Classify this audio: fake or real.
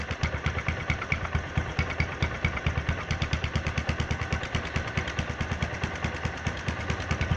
real